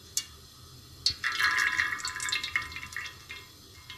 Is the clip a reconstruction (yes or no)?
no